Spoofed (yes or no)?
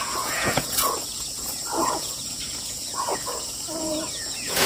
yes